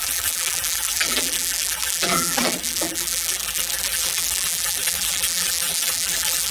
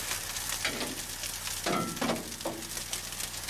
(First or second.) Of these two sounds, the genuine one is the second